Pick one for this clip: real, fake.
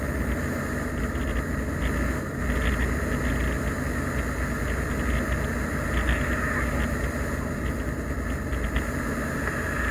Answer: real